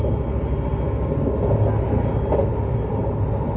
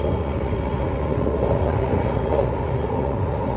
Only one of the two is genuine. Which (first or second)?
first